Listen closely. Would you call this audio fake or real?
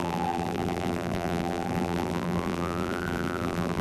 fake